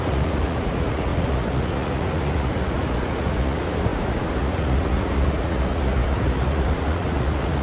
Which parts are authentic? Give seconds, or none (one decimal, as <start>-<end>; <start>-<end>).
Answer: none